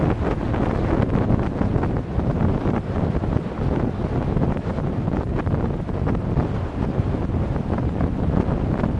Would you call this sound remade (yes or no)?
no